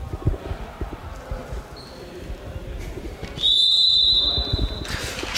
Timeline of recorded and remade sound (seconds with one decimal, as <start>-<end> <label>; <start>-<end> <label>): 0.0-5.4 recorded